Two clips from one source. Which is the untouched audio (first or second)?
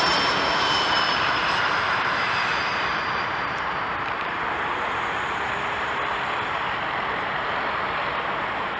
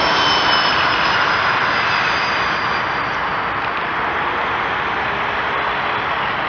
second